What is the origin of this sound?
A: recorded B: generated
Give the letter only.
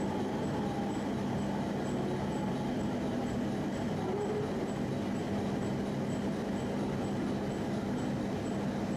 A